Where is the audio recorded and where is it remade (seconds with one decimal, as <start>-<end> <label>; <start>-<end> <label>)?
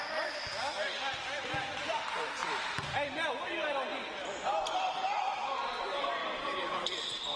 0.0-2.4 recorded; 2.4-3.3 remade; 3.3-6.2 recorded; 6.2-7.4 remade